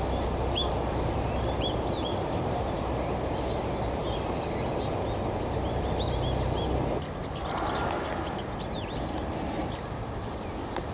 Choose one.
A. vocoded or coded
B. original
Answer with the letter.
B